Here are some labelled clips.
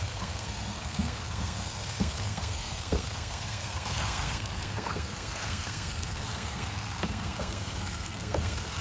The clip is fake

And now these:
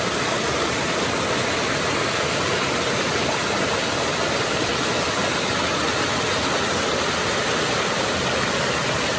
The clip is real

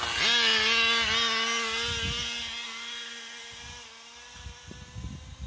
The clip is real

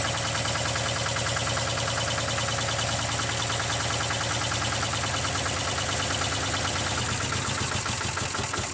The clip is real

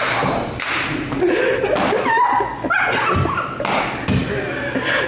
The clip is real